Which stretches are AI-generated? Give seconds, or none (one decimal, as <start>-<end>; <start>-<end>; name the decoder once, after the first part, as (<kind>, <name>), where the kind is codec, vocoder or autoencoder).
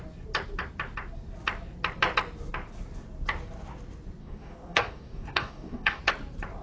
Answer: 4.2-6.0 (codec, DAC)